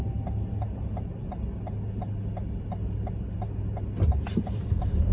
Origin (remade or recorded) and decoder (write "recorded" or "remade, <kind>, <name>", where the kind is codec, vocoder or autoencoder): recorded